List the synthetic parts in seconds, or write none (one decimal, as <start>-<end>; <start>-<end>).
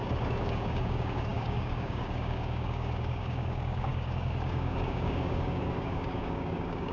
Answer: 0.0-6.9